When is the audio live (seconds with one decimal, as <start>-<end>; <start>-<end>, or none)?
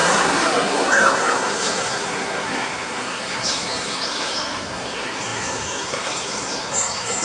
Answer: none